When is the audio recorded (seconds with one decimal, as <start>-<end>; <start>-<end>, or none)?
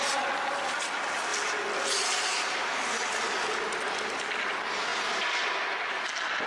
0.0-6.5